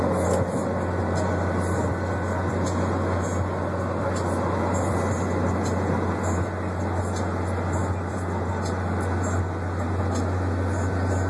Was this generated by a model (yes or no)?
no